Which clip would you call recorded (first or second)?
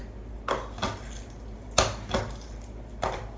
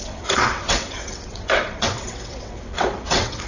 first